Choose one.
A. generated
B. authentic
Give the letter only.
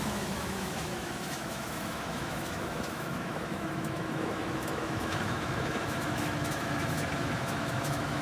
A